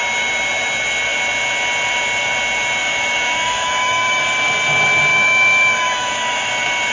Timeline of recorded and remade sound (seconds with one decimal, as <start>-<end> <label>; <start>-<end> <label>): 0.0-2.8 recorded; 2.8-4.2 remade; 4.2-5.1 recorded; 5.1-6.5 remade; 6.5-6.9 recorded